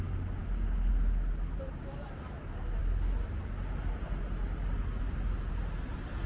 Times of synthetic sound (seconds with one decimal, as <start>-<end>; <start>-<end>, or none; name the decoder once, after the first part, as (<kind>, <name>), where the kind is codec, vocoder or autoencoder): none